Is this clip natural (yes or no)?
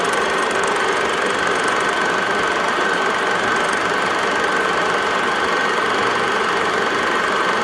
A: yes